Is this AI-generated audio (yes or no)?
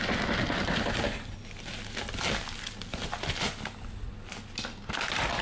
no